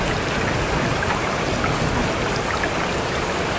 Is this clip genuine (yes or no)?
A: yes